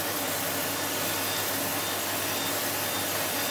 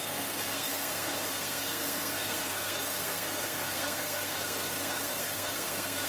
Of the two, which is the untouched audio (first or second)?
first